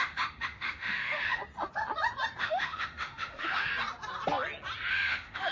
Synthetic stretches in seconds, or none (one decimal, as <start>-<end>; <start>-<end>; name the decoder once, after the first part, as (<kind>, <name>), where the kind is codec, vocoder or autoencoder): 0.0-1.4 (autoencoder, DAC-VAE); 2.4-3.7; 4.9-5.5